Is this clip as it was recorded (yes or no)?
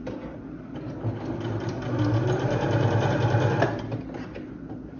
yes